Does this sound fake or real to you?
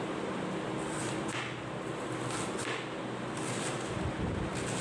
real